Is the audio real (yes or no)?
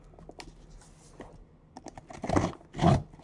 yes